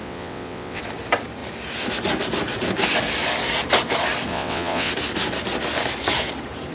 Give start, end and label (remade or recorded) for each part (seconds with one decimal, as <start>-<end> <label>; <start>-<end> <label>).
0.0-0.8 remade; 0.8-4.3 recorded; 4.3-4.9 remade; 4.9-6.7 recorded